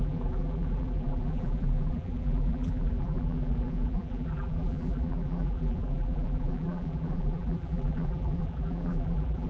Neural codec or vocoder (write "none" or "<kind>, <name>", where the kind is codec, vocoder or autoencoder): vocoder, BigVGAN v2